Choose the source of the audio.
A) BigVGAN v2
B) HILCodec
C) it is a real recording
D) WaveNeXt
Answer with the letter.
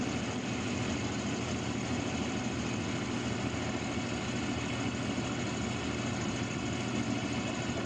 C